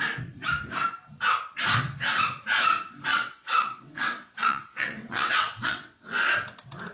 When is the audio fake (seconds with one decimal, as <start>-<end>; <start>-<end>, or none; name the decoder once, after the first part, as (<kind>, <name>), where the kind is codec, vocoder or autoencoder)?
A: 3.1-6.1 (vocoder, WaveNeXt)